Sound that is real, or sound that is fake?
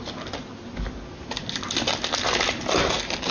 real